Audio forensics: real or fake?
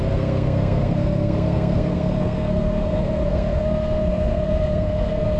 fake